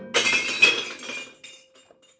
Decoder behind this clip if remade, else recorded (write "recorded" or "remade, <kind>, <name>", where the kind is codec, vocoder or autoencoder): recorded